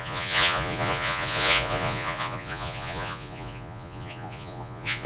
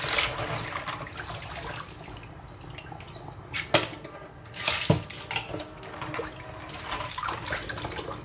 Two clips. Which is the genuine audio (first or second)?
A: second